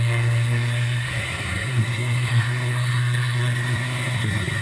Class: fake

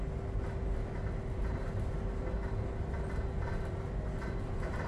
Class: real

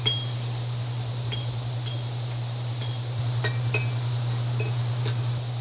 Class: real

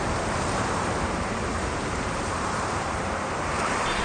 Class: fake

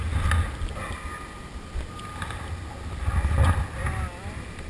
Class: real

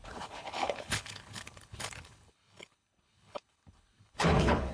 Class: fake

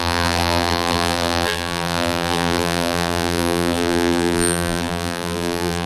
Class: fake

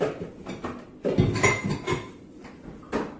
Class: real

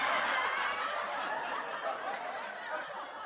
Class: real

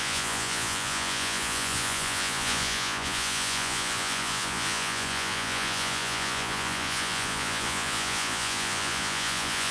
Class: fake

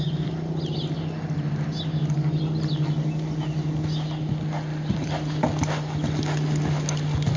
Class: real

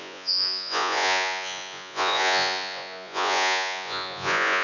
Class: fake